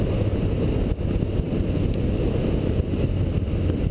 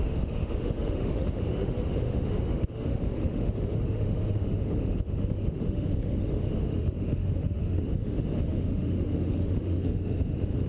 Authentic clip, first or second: first